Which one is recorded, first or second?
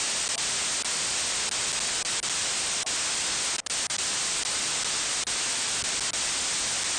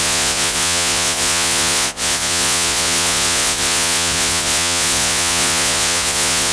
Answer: first